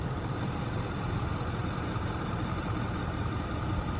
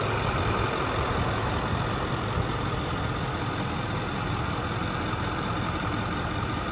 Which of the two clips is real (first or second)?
second